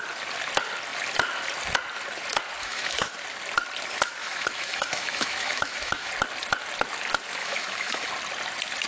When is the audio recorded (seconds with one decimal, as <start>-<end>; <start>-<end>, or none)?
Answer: 0.0-2.6; 3.1-4.2; 6.1-7.4; 8.1-8.9